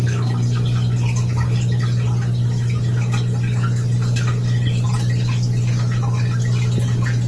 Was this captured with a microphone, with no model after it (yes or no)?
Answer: yes